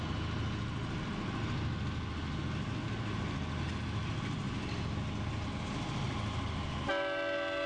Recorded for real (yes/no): yes